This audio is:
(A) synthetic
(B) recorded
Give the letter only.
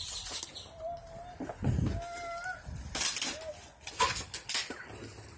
B